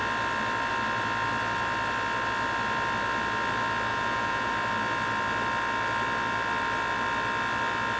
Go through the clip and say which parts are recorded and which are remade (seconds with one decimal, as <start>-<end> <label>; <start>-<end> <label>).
0.0-3.9 recorded; 3.9-4.5 remade; 4.5-8.0 recorded